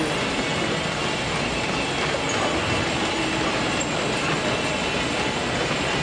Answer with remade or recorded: recorded